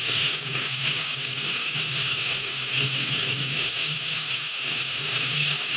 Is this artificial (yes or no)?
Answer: yes